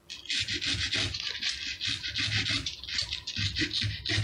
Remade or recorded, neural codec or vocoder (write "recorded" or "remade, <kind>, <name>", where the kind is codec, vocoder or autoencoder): recorded